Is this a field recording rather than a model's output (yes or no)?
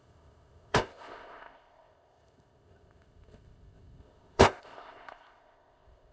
no